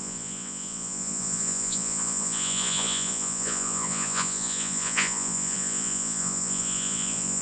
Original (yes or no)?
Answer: no